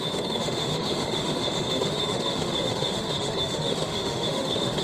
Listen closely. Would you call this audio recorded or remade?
remade